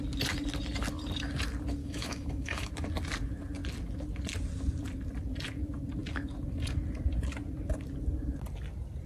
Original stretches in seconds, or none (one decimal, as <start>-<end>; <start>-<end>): 0.0-1.8; 2.7-9.1